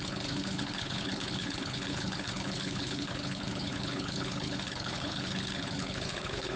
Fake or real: fake